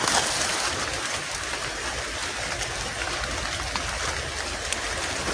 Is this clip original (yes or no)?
yes